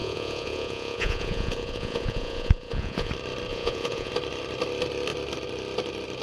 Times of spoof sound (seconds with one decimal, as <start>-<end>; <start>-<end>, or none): 0.0-3.1; 3.5-4.1